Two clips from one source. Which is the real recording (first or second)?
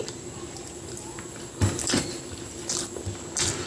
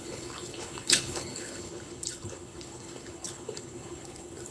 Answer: first